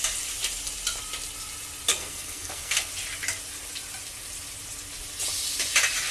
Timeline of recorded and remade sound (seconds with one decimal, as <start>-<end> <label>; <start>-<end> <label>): 0.0-1.9 recorded; 1.9-2.9 remade; 2.9-6.1 recorded